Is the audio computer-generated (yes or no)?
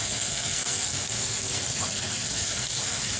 yes